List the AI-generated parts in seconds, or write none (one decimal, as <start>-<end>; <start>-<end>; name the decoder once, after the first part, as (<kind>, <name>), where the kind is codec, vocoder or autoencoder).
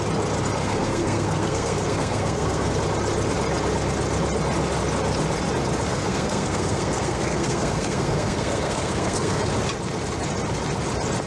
0.6-2.7 (codec, SNAC); 5.9-9.4